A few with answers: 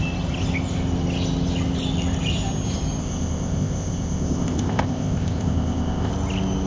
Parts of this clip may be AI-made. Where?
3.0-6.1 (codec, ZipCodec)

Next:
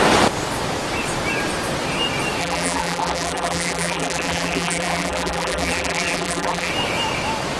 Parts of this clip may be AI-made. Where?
2.4-6.7 (vocoder, BigVGAN v2)

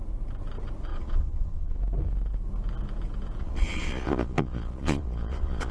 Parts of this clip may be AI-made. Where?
0.9-1.8 (vocoder, Vocos); 3.4-5.7

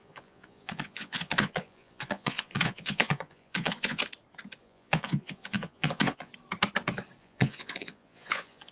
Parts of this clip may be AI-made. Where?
0.0-4.0 (vocoder, Vocos); 4.6-6.3; 7.2-8.7

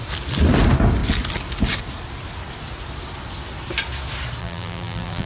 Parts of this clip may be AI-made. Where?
4.4-5.3 (vocoder, BigVGAN v2)

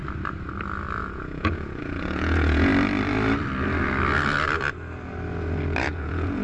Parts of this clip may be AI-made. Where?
1.0-2.7 (vocoder, Vocos); 5.8-6.4

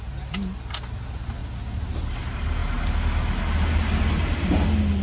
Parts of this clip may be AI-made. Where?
none